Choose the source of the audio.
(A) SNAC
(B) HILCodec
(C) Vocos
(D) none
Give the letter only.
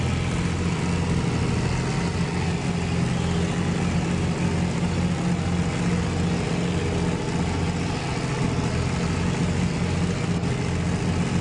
D